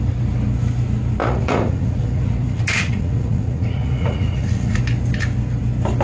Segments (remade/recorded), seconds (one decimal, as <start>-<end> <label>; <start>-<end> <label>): 0.0-1.2 recorded; 1.2-4.8 remade; 4.8-6.0 recorded